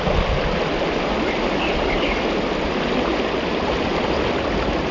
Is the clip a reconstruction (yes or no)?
no